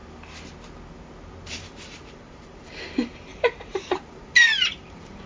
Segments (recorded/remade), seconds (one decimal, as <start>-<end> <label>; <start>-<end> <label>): 0.0-1.5 recorded; 1.5-5.3 remade